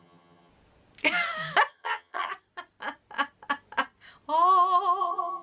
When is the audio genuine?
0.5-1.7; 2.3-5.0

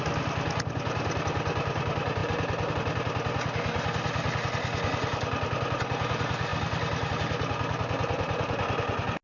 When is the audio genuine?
0.0-9.2

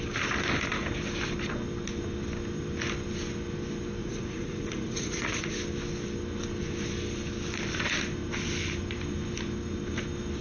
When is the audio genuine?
0.0-4.0; 5.6-10.4